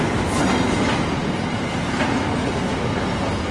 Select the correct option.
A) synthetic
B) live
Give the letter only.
B